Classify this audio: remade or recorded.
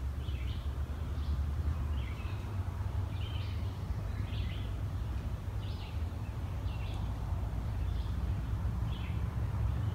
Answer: remade